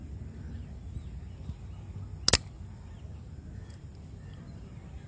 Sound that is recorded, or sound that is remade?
recorded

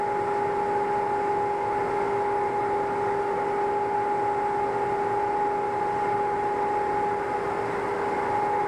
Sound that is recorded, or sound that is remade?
recorded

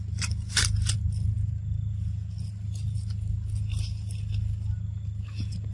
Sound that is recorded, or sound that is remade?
recorded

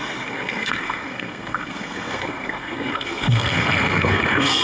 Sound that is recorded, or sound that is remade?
remade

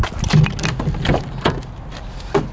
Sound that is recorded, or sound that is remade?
recorded